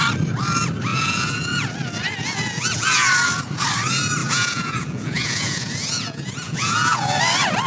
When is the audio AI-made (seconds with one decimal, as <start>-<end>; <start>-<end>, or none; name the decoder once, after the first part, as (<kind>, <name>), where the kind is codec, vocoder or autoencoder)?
0.9-1.7 (vocoder, Vocos); 2.2-3.1; 4.2-7.2